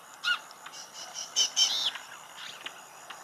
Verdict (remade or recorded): recorded